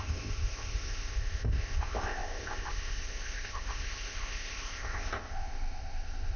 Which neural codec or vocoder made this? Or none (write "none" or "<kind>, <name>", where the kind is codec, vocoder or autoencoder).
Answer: codec, ZipCodec